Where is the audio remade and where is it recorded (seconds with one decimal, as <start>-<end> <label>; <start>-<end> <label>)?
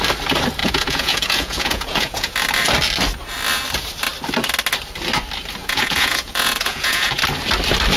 0.0-0.6 recorded; 0.6-2.3 remade; 2.3-5.6 recorded; 5.6-7.2 remade; 7.2-8.0 recorded